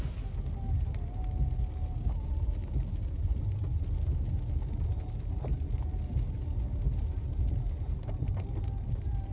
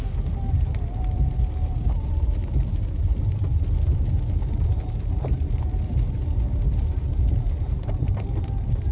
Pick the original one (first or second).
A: first